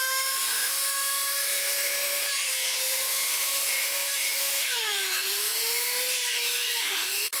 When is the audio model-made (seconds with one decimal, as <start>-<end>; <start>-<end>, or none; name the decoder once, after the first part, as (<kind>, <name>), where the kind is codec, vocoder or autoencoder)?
0.0-7.4 (autoencoder, DAC-VAE)